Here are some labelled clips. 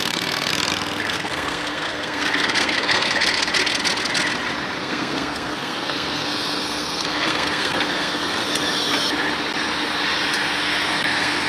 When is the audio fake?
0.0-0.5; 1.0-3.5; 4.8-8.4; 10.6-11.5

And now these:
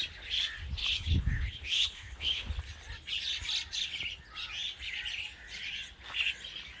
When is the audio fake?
0.8-2.5

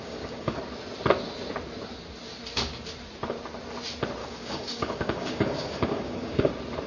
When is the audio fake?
0.0-0.6; 4.2-6.5

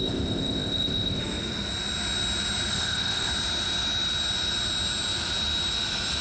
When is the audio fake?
0.0-1.2; 2.7-3.3

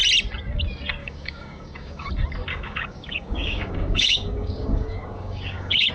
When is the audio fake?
1.0-2.1; 2.5-5.9

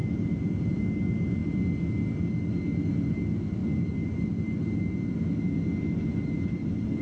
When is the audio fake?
0.0-0.8; 3.6-4.2; 6.1-7.0

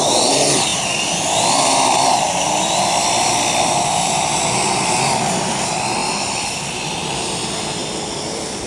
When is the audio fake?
0.7-5.5; 6.0-6.6; 7.8-8.7